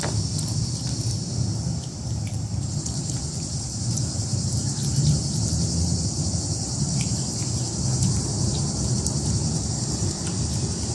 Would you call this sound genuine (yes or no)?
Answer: no